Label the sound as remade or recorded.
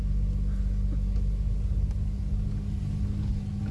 recorded